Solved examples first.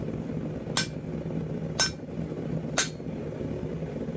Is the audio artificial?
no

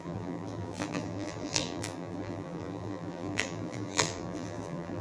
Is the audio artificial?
yes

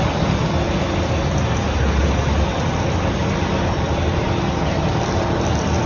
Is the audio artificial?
no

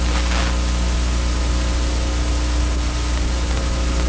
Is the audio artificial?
no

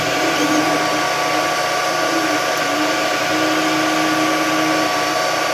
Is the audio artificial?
no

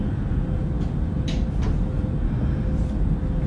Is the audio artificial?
no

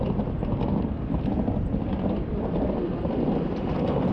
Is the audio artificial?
no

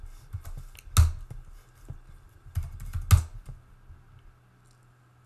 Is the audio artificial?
no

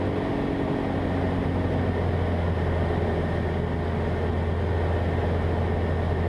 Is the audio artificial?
no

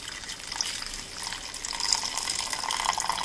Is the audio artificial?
no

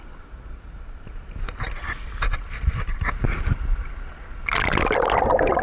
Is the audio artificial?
no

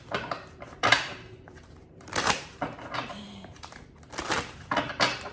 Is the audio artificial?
yes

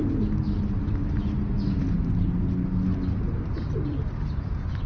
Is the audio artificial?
no